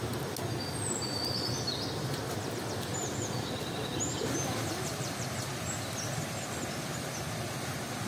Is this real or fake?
real